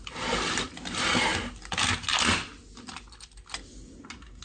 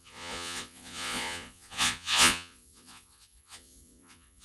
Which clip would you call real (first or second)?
first